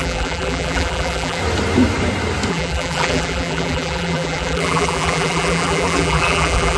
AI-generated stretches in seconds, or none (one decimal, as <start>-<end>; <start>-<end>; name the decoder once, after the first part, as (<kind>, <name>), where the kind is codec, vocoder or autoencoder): 0.0-1.4 (vocoder, BigVGAN v2); 2.5-6.8